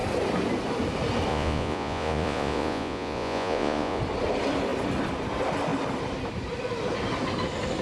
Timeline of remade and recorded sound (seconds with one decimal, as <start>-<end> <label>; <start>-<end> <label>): 0.0-1.3 recorded; 1.3-4.0 remade; 4.0-7.8 recorded